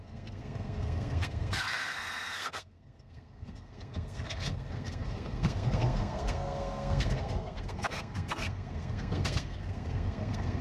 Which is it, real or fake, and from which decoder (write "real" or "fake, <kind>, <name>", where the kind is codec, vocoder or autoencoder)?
fake, codec, SNAC